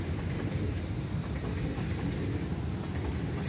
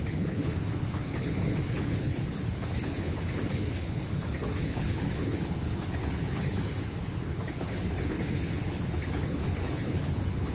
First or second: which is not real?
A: second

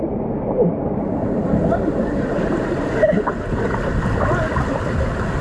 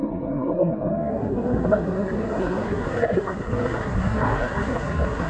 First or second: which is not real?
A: second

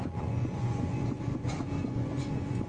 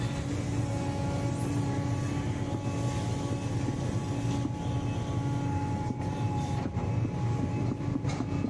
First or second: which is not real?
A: first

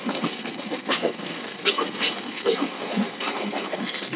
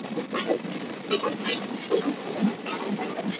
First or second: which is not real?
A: first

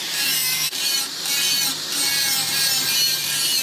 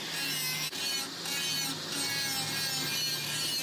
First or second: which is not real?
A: first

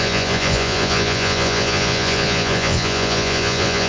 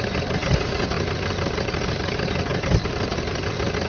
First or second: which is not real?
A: first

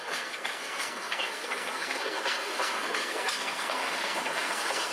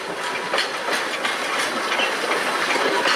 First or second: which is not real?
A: first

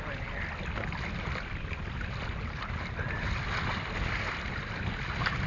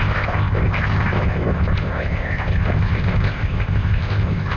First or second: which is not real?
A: second